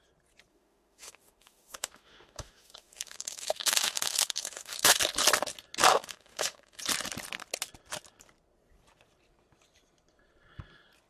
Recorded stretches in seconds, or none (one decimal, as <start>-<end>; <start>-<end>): 0.0-0.5; 5.0-5.9; 6.8-11.1